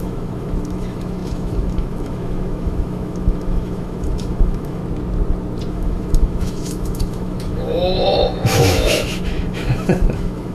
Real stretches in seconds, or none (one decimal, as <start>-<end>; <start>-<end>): 4.8-5.7